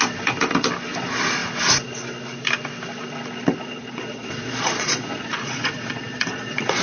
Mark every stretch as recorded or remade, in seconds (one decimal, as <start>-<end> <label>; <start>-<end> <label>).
0.0-3.6 recorded; 3.6-6.8 remade